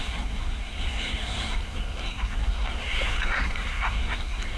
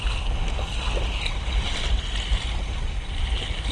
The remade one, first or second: first